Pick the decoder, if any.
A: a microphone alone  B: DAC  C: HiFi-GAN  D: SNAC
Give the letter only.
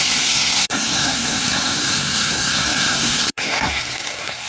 D